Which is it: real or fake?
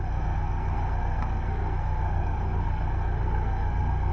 fake